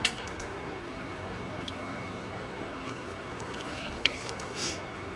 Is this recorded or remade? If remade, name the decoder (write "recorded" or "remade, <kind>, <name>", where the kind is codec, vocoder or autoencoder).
remade, codec, SNAC